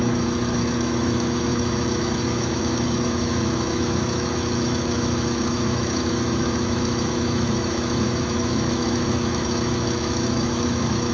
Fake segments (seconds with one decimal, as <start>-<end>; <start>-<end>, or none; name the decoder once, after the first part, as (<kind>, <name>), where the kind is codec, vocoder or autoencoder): 0.0-11.1 (autoencoder, DAC-VAE)